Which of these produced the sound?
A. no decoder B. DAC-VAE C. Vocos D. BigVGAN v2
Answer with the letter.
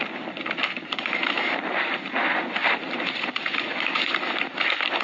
D